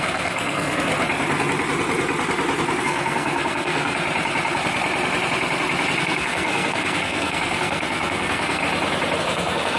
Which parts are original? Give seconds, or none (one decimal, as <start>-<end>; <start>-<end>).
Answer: 0.9-2.8; 4.0-6.0; 8.6-9.2